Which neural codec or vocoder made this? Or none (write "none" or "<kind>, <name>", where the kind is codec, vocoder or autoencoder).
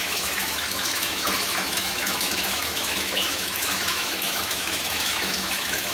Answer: autoencoder, DAC-VAE